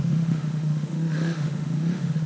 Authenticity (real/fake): fake